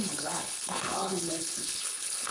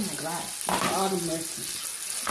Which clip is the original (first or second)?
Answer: second